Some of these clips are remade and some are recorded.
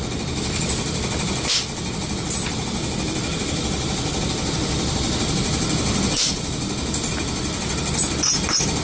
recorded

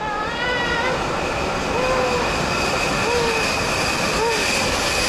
recorded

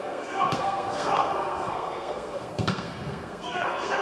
remade